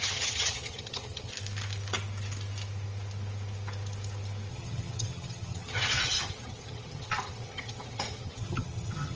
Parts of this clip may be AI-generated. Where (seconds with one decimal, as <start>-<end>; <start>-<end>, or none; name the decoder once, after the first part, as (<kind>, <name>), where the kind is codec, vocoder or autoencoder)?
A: 0.0-1.3 (vocoder, HiFi-GAN); 4.5-9.2